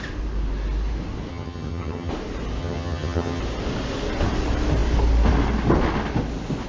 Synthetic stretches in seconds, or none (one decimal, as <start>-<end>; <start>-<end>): 1.3-2.1; 2.6-3.4